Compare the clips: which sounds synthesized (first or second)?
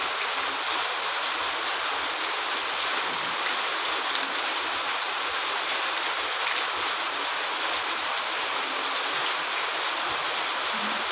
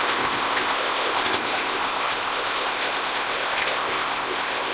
second